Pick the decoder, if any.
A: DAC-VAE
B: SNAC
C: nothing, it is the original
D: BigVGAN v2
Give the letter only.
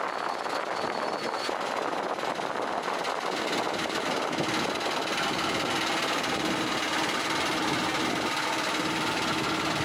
C